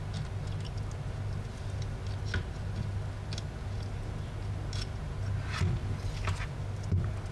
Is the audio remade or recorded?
recorded